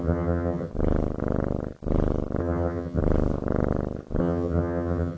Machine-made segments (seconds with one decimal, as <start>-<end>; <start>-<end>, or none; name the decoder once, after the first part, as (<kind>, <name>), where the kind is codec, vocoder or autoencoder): 0.0-0.7 (vocoder, HiFi-GAN); 2.4-3.0; 4.2-5.2